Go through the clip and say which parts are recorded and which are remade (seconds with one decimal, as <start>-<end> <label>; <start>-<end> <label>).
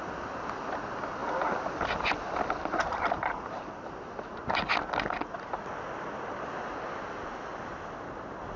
0.0-8.6 recorded